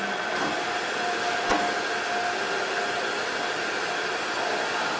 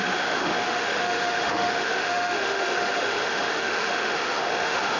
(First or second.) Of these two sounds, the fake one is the second